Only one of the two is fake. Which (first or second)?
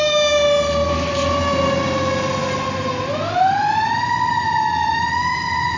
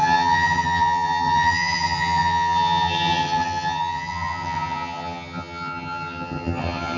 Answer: second